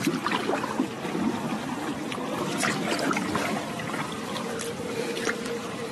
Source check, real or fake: fake